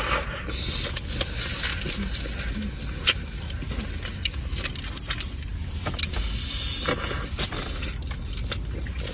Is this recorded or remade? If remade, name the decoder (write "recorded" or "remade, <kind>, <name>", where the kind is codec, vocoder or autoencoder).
recorded